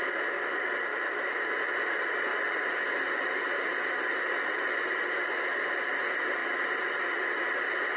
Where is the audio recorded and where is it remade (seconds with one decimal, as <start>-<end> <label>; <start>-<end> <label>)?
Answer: 0.0-0.9 recorded; 0.9-1.6 remade; 1.6-8.0 recorded